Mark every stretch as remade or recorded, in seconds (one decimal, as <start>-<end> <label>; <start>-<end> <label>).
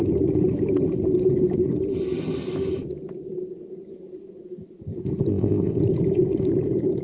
0.0-5.3 recorded; 5.3-5.8 remade; 5.8-7.0 recorded